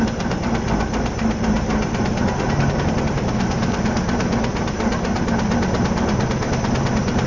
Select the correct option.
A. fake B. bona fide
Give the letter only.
B